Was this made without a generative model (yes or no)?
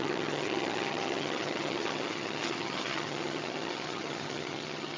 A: no